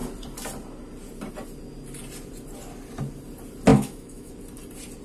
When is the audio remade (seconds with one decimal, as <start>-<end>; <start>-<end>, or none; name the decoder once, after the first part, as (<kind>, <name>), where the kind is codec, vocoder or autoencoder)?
3.7-4.3 (autoencoder, DAC-VAE)